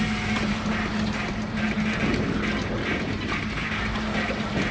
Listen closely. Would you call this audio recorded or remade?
recorded